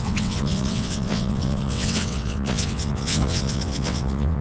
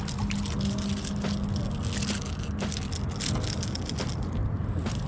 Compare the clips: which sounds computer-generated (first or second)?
first